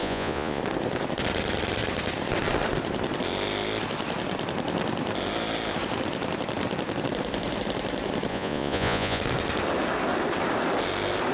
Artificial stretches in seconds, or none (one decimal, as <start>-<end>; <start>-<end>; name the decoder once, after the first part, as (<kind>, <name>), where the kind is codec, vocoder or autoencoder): 0.0-0.6 (vocoder, Vocos); 8.3-9.2